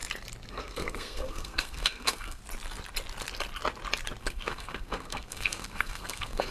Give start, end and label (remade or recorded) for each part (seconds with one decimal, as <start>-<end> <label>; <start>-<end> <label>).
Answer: 0.0-0.5 recorded; 0.5-2.4 remade; 2.4-4.2 recorded; 4.2-6.5 remade